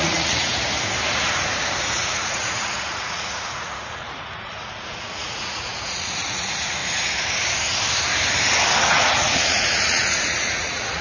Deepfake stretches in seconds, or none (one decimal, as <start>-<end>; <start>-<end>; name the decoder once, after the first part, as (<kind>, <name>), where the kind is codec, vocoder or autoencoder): 0.0-0.6 (vocoder, Vocos); 1.8-6.8; 8.8-11.0